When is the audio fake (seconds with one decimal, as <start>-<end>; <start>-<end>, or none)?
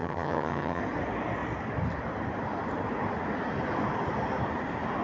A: 0.0-0.8